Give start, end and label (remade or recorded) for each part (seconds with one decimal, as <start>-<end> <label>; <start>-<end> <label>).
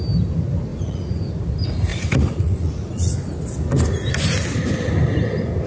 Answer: 0.0-0.7 recorded; 0.7-1.3 remade; 1.3-1.9 recorded; 1.9-3.1 remade; 3.1-5.7 recorded